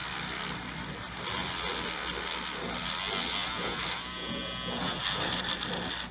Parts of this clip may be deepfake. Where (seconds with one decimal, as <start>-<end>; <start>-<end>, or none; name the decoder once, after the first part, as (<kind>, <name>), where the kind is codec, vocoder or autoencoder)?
0.0-1.5 (vocoder, BigVGAN v2); 3.4-4.1